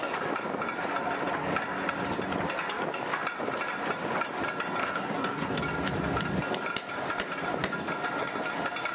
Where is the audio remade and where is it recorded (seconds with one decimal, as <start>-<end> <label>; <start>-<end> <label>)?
0.0-4.8 recorded; 4.8-5.6 remade; 5.6-8.9 recorded

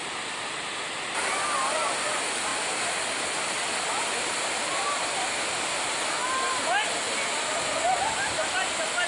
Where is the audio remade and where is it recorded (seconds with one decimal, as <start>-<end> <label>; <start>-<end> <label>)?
0.0-9.1 recorded

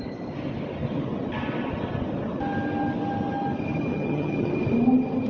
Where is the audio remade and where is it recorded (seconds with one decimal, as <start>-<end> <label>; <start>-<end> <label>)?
0.0-3.9 recorded; 3.9-4.5 remade; 4.5-5.3 recorded

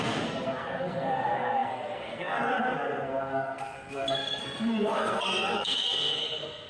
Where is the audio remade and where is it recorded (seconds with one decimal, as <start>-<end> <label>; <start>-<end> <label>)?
0.0-6.7 remade

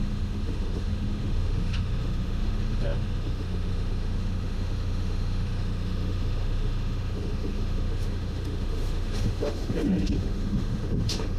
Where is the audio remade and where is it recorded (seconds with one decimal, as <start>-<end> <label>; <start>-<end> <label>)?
0.0-11.4 remade

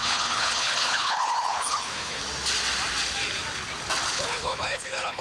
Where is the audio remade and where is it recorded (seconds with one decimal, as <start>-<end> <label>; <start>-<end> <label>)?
0.0-2.2 remade; 2.2-4.1 recorded; 4.1-5.2 remade

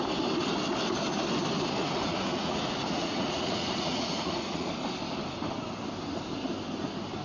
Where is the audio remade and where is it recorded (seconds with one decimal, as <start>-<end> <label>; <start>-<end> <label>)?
0.0-1.8 recorded; 1.8-4.7 remade; 4.7-7.2 recorded

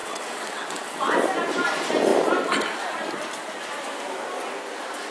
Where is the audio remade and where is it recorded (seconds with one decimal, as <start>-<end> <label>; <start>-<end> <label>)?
0.0-1.0 remade; 1.0-5.1 recorded